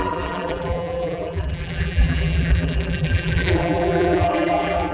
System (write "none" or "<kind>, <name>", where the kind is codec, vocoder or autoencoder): vocoder, BigVGAN v2